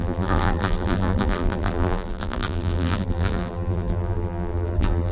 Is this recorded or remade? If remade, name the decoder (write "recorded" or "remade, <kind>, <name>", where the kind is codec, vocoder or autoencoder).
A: remade, vocoder, BigVGAN v2